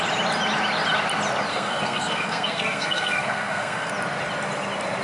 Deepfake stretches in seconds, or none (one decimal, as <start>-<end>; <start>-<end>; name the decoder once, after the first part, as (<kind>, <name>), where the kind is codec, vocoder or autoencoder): 1.5-3.9 (codec, SNAC)